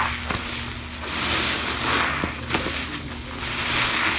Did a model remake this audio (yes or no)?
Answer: no